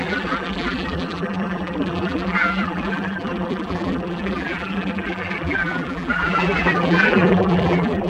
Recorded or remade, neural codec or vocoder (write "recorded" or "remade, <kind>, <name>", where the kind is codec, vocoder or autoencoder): remade, vocoder, BigVGAN v2